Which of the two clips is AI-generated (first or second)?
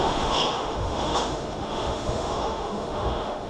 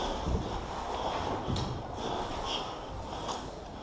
first